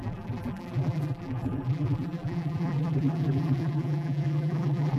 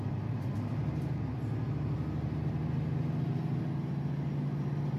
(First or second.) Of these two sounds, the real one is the second